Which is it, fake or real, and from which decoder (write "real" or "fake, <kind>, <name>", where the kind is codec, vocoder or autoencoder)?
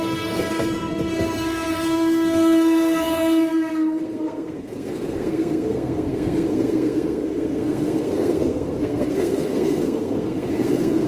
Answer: fake, codec, SNAC